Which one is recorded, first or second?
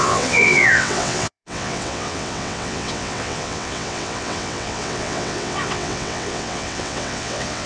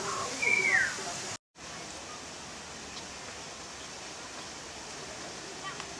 second